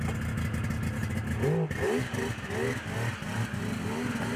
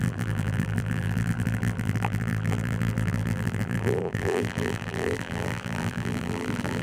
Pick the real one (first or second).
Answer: first